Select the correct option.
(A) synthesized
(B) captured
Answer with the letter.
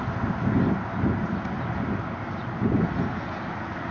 B